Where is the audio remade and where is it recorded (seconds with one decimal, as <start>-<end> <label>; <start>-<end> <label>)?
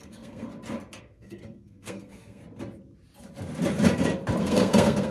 0.0-0.5 remade; 0.5-1.0 recorded; 1.0-2.4 remade; 2.4-4.4 recorded; 4.4-5.1 remade